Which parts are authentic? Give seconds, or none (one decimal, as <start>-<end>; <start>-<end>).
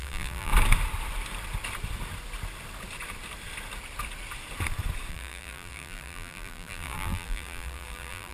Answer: 0.5-5.1